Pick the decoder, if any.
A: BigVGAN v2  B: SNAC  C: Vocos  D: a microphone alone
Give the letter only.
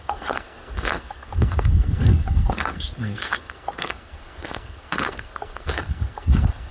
B